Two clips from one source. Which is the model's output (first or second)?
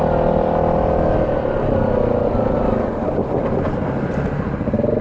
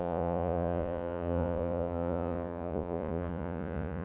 second